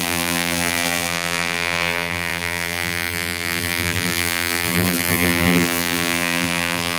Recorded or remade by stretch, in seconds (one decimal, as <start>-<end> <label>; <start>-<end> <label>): 0.0-7.0 remade